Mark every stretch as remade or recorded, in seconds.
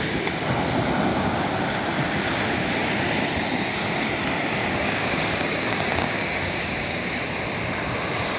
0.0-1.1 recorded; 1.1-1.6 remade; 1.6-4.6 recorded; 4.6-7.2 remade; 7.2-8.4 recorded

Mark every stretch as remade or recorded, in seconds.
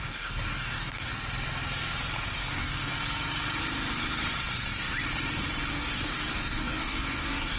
0.0-1.1 remade; 1.1-2.4 recorded; 2.4-2.9 remade; 2.9-5.7 recorded; 5.7-7.6 remade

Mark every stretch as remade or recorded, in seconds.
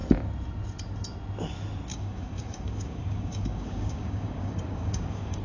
0.0-1.9 recorded; 1.9-5.4 remade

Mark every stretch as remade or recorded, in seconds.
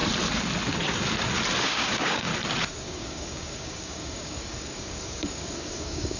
0.0-1.6 recorded; 1.6-2.3 remade; 2.3-2.8 recorded; 2.8-6.2 remade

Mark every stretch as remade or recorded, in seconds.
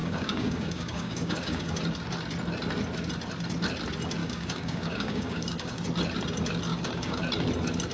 0.0-1.7 remade; 1.7-4.2 recorded; 4.2-5.8 remade; 5.8-6.7 recorded; 6.7-7.2 remade; 7.2-7.9 recorded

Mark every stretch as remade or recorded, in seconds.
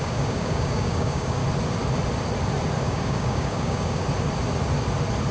0.0-1.4 remade; 1.4-2.8 recorded; 2.8-4.0 remade; 4.0-5.3 recorded